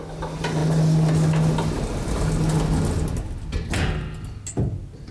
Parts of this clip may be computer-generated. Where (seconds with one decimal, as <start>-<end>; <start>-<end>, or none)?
none